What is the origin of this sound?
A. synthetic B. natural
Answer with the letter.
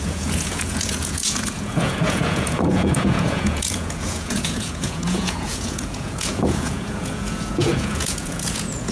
A